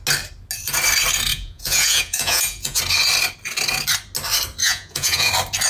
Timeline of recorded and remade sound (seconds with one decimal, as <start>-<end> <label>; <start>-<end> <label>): 0.0-1.3 recorded; 1.3-2.8 remade; 2.8-4.6 recorded; 4.6-5.3 remade; 5.3-5.7 recorded